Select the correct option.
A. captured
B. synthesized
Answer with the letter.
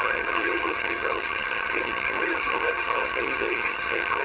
B